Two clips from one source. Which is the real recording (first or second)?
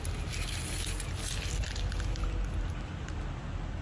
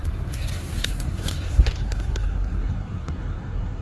first